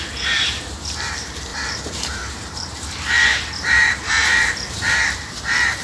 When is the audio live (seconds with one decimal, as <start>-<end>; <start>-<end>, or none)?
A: none